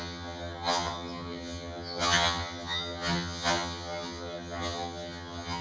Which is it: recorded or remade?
remade